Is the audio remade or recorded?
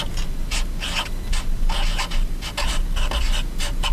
recorded